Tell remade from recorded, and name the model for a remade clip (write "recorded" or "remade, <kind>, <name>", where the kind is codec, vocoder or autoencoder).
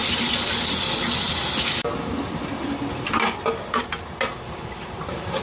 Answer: recorded